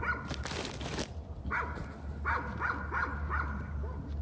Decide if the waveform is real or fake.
real